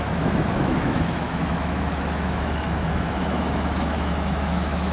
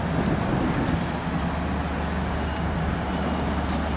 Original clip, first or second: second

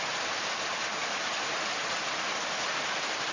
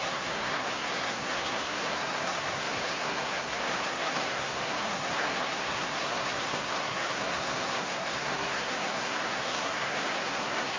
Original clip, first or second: first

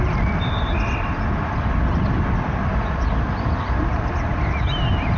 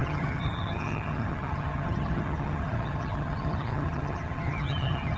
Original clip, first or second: first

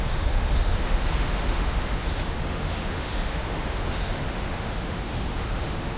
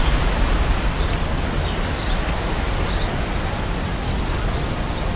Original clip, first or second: second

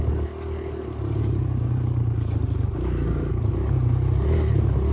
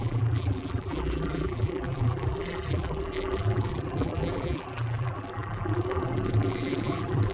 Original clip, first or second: first